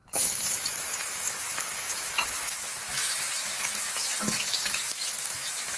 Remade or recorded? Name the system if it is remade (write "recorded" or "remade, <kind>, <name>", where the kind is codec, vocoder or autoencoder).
remade, autoencoder, DAC-VAE